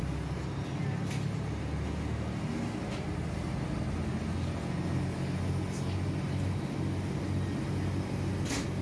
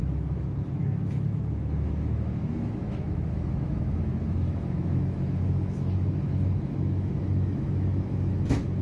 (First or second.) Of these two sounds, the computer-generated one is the second